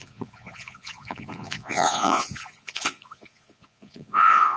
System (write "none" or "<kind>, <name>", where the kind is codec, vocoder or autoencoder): vocoder, Vocos